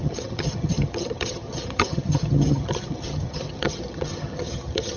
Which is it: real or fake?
fake